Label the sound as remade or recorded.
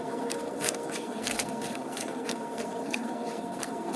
remade